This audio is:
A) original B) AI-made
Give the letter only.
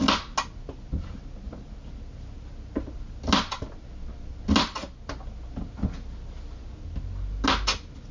A